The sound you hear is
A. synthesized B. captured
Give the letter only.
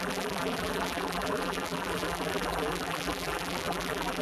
A